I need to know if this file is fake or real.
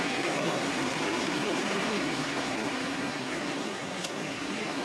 fake